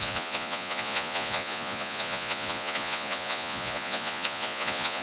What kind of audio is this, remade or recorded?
remade